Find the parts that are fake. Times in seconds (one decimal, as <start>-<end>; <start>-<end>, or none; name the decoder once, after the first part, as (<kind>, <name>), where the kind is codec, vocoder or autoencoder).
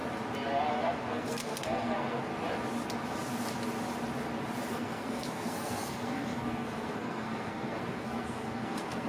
0.7-2.3 (codec, SNAC); 4.7-9.1